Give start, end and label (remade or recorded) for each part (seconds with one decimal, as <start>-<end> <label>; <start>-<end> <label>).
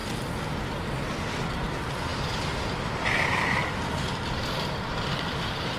0.0-5.8 recorded